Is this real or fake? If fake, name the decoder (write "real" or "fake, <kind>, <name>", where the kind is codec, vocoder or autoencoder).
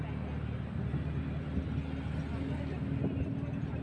real